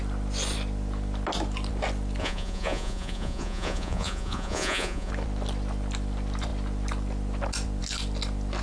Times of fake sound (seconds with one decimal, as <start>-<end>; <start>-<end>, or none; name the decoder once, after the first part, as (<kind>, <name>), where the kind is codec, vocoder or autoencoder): 2.2-5.1 (vocoder, Vocos)